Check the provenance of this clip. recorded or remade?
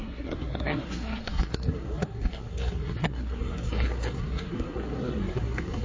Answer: remade